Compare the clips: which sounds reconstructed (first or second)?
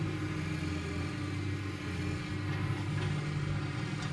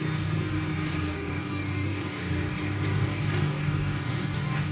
second